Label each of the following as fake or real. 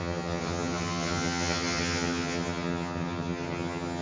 fake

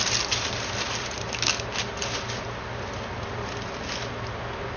real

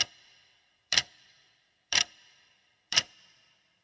fake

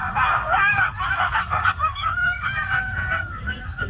fake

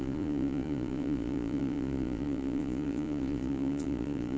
fake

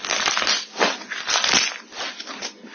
real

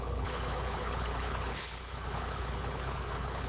fake